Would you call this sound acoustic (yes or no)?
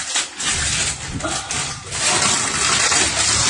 yes